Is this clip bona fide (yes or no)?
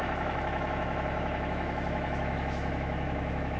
no